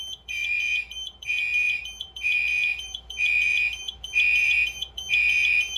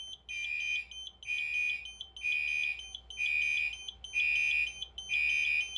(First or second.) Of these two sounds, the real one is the second